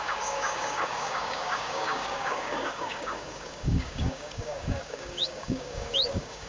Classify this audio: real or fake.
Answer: fake